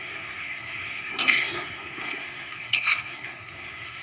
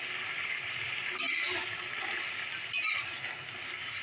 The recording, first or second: second